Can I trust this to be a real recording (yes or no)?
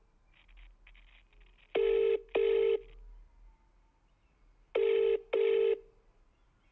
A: yes